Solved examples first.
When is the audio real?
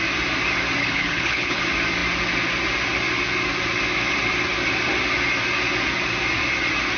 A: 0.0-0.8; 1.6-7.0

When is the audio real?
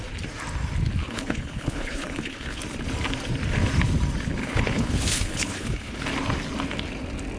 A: 0.0-1.0; 2.6-4.4; 6.0-7.4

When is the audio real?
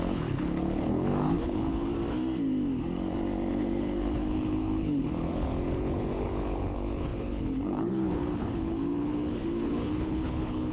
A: 1.9-3.5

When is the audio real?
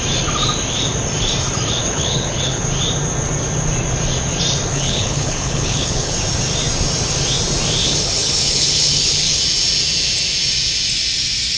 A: 0.0-1.8; 2.6-4.7; 6.1-7.8; 9.4-11.6